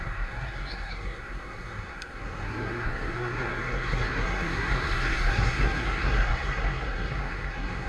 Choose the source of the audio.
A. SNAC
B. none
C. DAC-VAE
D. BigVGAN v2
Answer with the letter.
A